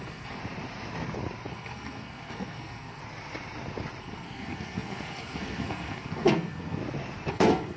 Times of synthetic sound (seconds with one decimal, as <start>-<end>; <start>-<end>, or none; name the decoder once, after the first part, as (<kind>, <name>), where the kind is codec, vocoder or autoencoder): 0.0-0.4 (codec, SNAC); 1.5-3.0; 4.0-6.8; 7.3-7.8